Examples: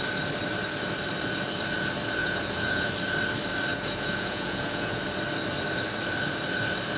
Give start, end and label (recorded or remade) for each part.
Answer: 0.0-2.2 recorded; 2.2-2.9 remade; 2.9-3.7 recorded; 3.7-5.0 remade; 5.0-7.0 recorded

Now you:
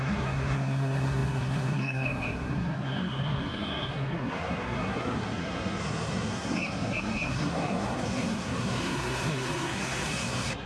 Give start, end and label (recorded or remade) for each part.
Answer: 0.0-10.7 remade

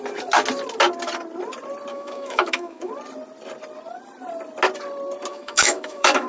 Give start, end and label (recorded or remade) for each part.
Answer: 0.0-1.9 recorded; 1.9-2.9 remade; 2.9-5.3 recorded; 5.3-6.3 remade

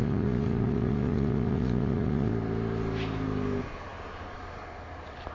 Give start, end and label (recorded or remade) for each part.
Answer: 0.0-2.3 remade; 2.3-5.3 recorded

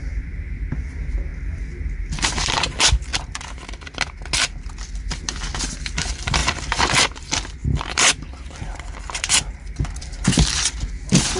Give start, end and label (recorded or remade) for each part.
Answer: 0.0-3.1 remade; 3.1-5.7 recorded; 5.7-11.4 remade